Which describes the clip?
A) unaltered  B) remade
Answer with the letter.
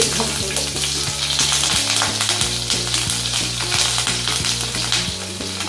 A